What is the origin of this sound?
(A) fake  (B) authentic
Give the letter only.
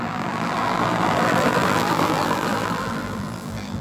A